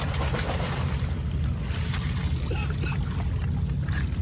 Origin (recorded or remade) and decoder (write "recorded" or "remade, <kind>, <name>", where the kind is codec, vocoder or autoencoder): recorded